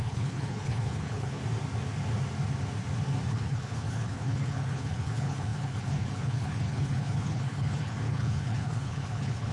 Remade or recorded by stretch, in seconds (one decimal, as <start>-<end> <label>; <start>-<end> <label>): 0.0-1.4 remade; 1.4-3.3 recorded; 3.3-9.5 remade